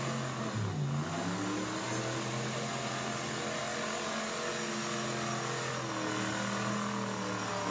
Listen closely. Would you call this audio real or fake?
real